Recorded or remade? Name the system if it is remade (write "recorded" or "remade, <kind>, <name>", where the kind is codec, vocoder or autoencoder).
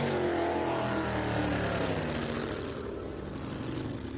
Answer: recorded